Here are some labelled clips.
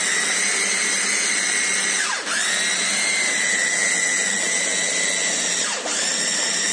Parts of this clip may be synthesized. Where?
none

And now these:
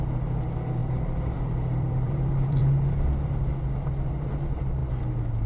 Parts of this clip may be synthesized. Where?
0.8-4.1 (vocoder, BigVGAN v2)

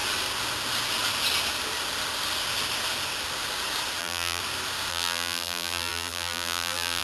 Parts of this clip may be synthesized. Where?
4.0-4.4 (vocoder, BigVGAN v2); 4.9-7.0

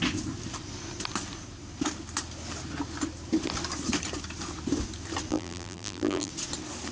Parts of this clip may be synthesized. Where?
5.3-6.3 (vocoder, BigVGAN v2)

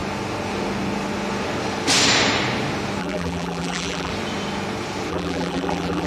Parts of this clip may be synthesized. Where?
3.0-4.1 (vocoder, BigVGAN v2); 5.1-6.1

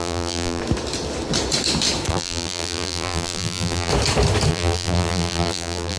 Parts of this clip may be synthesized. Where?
0.0-0.6 (vocoder, BigVGAN v2); 2.1-3.9; 4.5-6.0

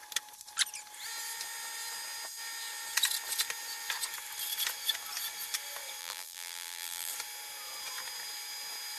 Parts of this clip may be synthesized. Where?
6.0-7.1 (vocoder, BigVGAN v2)

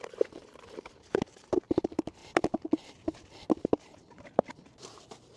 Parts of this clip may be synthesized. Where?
0.0-2.2 (vocoder, BigVGAN v2); 3.6-5.4